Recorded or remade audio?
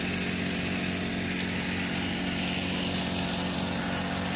recorded